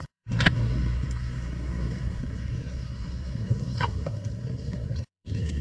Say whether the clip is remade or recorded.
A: remade